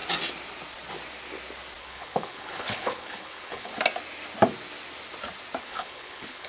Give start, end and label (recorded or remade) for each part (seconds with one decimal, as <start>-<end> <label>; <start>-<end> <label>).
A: 0.0-1.8 recorded; 1.8-3.7 remade; 3.7-5.6 recorded; 5.6-6.5 remade